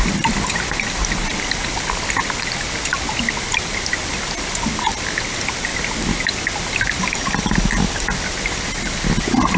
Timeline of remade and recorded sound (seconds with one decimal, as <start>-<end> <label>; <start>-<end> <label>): 0.0-9.6 recorded